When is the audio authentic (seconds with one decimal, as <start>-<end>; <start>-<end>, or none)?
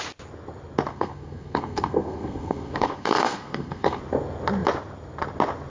0.0-0.9; 4.0-5.7